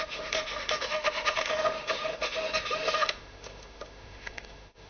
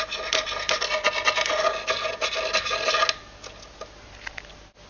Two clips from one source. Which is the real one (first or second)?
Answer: second